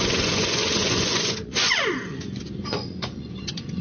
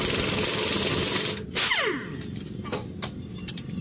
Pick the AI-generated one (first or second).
first